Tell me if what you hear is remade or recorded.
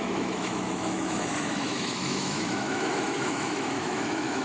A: remade